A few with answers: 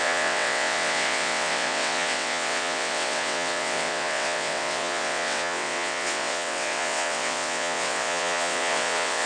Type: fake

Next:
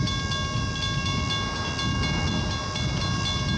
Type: real